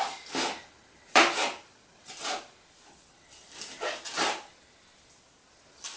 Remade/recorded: recorded